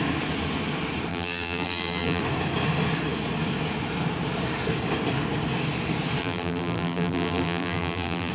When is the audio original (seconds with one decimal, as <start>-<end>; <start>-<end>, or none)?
0.0-1.1; 2.2-6.2